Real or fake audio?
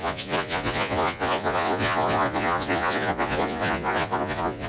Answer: fake